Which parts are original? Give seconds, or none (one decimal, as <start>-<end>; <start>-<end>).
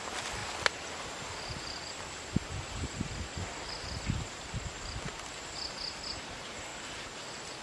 0.0-7.6